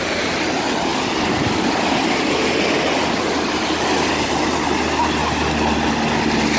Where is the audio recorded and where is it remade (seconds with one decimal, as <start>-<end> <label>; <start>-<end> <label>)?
0.0-6.6 recorded